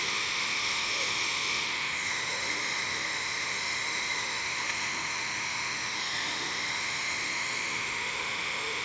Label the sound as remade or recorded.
remade